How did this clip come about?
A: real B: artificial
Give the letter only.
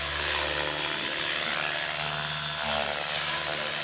A